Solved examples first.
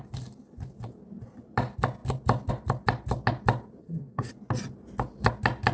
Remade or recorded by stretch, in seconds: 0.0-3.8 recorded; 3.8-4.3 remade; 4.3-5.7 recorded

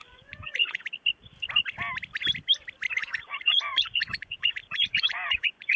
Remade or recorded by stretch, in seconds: 0.0-0.8 remade; 0.8-3.0 recorded; 3.0-5.8 remade

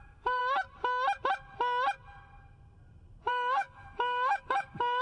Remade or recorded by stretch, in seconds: 0.0-0.4 remade; 0.4-3.3 recorded; 3.3-5.0 remade